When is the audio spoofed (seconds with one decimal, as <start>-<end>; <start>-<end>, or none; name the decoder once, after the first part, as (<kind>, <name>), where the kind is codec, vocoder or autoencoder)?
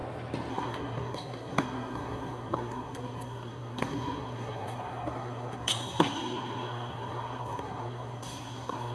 0.5-8.9 (codec, SNAC)